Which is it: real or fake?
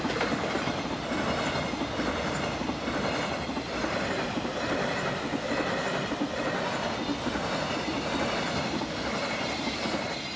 real